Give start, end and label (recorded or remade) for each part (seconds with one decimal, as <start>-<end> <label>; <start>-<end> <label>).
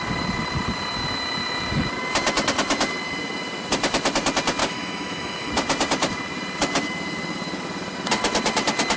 0.0-4.6 recorded; 4.6-5.5 remade; 5.5-9.0 recorded